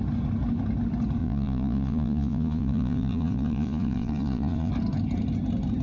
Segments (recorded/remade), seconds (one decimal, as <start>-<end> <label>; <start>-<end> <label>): 0.0-1.2 recorded; 1.2-4.7 remade; 4.7-5.8 recorded